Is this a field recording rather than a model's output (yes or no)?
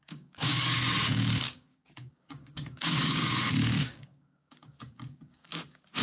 no